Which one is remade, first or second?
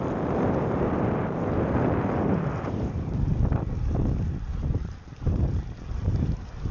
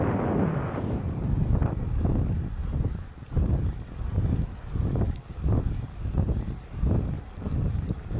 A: first